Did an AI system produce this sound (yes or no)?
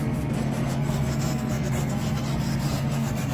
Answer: yes